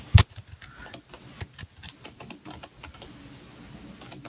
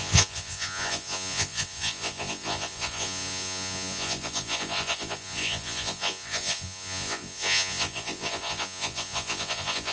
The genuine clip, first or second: first